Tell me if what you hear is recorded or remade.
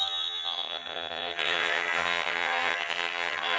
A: remade